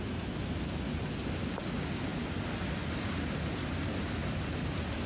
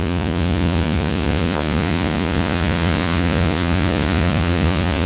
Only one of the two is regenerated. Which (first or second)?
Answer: second